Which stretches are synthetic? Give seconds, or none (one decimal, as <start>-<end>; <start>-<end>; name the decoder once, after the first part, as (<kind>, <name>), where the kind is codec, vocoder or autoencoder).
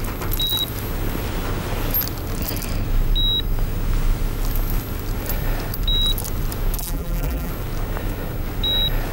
6.8-7.5 (vocoder, BigVGAN v2)